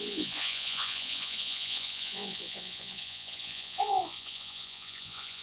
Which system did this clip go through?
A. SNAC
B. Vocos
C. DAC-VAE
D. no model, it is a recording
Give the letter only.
B